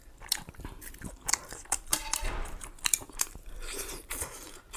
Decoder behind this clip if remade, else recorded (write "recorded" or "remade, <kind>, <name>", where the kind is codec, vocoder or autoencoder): remade, vocoder, BigVGAN v2